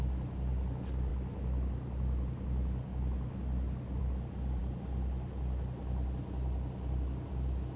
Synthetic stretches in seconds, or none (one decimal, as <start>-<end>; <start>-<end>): none